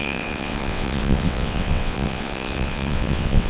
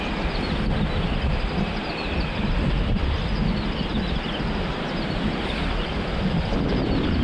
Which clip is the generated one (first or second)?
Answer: first